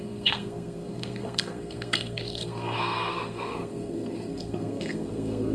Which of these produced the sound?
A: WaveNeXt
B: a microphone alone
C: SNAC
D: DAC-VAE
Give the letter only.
C